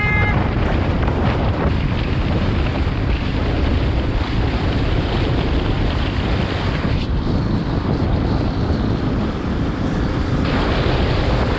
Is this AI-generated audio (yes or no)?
yes